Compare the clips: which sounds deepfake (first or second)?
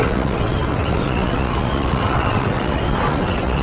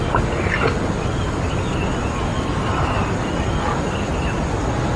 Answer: first